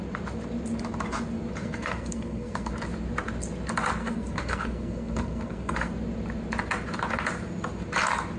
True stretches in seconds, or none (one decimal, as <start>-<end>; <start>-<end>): 0.0-1.6; 2.7-4.0; 5.9-8.4